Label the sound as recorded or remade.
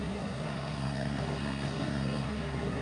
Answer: remade